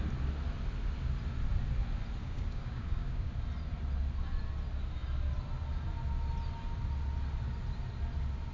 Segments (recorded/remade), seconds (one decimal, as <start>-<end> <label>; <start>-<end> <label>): 0.0-2.2 recorded; 2.2-3.3 remade; 3.3-8.5 recorded